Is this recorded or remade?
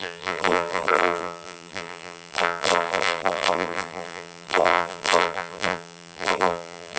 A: remade